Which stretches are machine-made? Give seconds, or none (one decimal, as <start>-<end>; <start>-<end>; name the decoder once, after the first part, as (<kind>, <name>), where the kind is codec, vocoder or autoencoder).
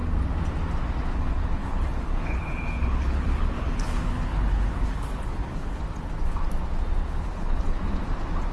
1.1-5.8 (codec, HILCodec); 7.0-7.8